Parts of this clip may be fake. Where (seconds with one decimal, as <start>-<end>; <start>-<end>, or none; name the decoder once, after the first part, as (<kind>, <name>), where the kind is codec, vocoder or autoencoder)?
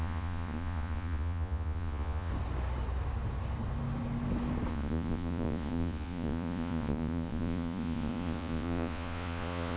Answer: 0.0-2.3 (vocoder, Vocos); 4.7-9.8